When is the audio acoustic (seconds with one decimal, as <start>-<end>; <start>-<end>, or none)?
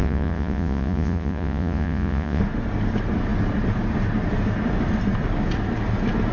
2.4-6.3